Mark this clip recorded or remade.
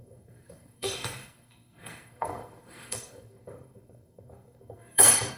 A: remade